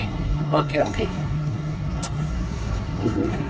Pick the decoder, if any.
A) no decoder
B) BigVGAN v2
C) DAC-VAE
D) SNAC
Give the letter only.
D